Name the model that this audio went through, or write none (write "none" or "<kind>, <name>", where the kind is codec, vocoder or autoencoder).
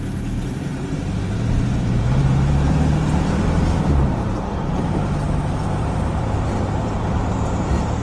vocoder, BigVGAN v2